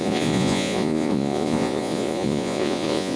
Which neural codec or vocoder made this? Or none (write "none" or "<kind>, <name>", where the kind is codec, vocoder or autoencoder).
vocoder, Vocos